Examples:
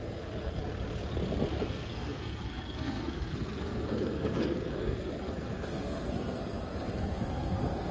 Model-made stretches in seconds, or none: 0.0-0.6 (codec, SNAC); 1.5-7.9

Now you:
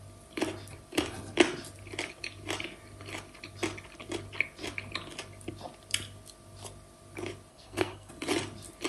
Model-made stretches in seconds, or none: 7.5-8.1 (codec, SNAC)